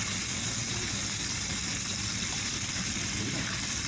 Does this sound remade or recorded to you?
recorded